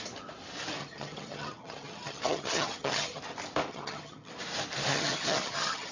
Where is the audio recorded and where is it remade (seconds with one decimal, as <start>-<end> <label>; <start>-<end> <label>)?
0.0-0.8 recorded; 0.8-3.2 remade; 3.2-3.7 recorded; 3.7-4.3 remade; 4.3-4.9 recorded; 4.9-5.9 remade